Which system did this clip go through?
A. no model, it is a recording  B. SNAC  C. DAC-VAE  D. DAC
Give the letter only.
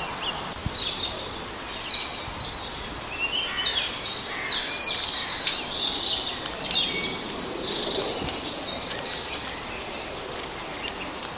A